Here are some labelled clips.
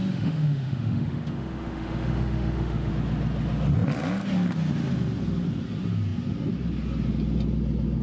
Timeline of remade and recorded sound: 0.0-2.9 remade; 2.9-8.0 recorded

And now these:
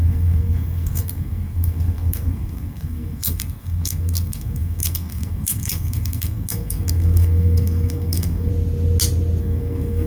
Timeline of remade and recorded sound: 0.0-8.5 remade; 8.5-9.4 recorded; 9.4-10.1 remade

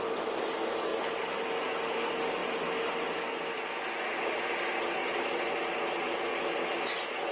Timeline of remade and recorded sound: 0.0-7.3 recorded

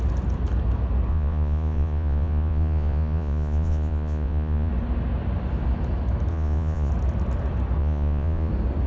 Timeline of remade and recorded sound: 0.0-1.1 recorded; 1.1-4.7 remade; 4.7-6.3 recorded; 6.3-6.9 remade; 6.9-7.8 recorded; 7.8-8.5 remade; 8.5-8.9 recorded

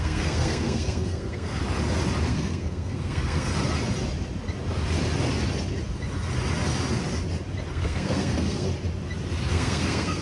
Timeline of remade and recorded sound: 0.0-1.6 remade; 1.6-2.3 recorded; 2.3-3.5 remade; 3.5-7.7 recorded; 7.7-8.7 remade; 8.7-9.5 recorded; 9.5-10.2 remade

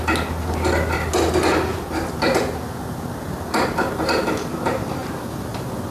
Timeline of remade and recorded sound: 0.0-5.9 recorded

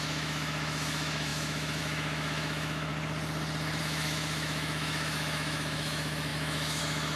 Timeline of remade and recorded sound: 0.0-2.9 remade; 2.9-3.8 recorded; 3.8-7.2 remade